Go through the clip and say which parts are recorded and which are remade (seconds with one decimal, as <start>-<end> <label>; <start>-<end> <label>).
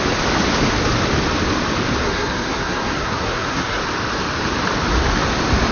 0.0-2.0 recorded; 2.0-3.8 remade; 3.8-5.7 recorded